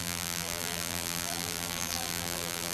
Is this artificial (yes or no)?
yes